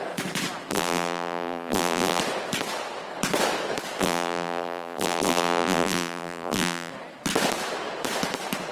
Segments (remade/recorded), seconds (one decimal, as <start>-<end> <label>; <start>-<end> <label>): 0.0-0.7 recorded; 0.7-2.2 remade; 2.2-4.0 recorded; 4.0-6.9 remade; 6.9-8.7 recorded